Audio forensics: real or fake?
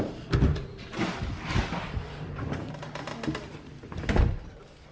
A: real